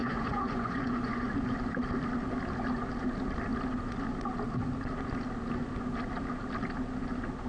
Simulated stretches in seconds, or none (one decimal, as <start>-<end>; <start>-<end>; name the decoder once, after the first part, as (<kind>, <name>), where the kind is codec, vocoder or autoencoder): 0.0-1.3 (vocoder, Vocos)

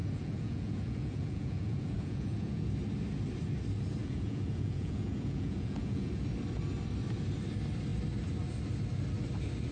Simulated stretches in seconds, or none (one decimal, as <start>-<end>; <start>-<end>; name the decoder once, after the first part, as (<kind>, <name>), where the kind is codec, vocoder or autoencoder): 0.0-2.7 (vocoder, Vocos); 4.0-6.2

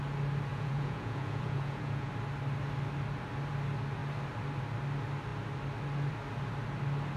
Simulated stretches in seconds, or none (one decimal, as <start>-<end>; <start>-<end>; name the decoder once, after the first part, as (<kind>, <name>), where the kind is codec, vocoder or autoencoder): 0.5-2.1 (vocoder, Vocos)

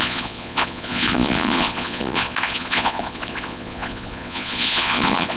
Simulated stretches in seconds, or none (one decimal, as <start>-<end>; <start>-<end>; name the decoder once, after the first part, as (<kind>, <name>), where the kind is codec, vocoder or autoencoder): 0.0-5.4 (vocoder, Vocos)

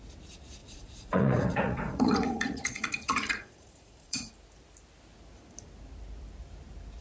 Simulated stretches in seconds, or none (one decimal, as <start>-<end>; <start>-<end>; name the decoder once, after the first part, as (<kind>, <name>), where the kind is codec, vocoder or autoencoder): 0.6-4.3 (vocoder, Vocos)

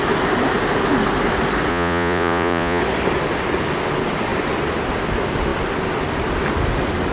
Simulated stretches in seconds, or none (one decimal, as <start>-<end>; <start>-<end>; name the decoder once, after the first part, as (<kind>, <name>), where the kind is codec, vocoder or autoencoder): 1.7-2.8 (vocoder, Vocos)

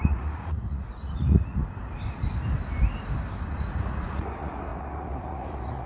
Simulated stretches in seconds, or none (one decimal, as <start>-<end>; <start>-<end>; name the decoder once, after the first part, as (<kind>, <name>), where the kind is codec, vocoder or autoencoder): 0.0-1.6 (vocoder, Vocos); 3.5-5.9

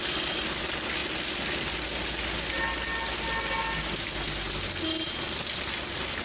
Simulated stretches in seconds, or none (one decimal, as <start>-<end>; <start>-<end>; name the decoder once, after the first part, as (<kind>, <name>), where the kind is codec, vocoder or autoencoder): none